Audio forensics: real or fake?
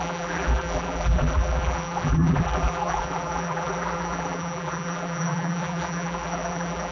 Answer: fake